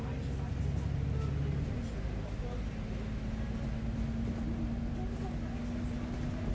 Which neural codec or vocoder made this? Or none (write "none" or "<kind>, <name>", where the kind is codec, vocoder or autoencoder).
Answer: none